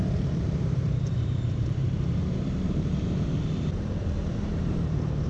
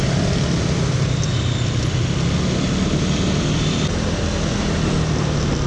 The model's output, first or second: first